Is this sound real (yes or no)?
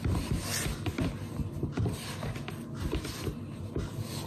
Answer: yes